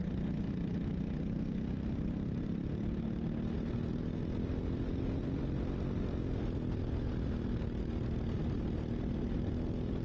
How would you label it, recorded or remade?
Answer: recorded